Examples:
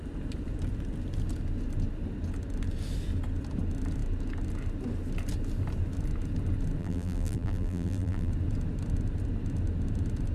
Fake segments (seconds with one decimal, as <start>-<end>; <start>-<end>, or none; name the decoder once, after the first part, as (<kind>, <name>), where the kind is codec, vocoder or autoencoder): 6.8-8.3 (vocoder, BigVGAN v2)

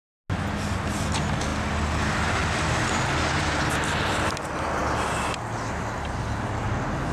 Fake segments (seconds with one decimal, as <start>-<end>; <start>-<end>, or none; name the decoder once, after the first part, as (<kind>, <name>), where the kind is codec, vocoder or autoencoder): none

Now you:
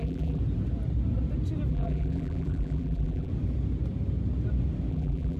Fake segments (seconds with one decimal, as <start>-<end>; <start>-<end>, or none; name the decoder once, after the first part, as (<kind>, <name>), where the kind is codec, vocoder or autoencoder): 0.0-0.4 (vocoder, BigVGAN v2); 1.7-3.3; 4.9-5.4